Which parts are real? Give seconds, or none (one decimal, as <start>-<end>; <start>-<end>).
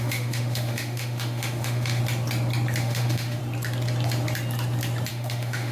2.0-2.8; 3.4-5.1